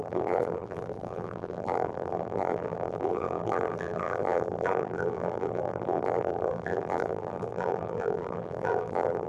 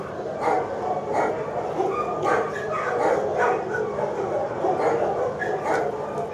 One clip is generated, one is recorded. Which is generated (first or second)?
first